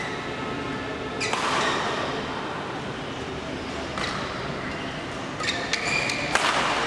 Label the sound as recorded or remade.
recorded